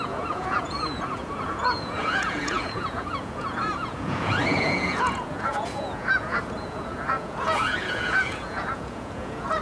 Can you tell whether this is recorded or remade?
remade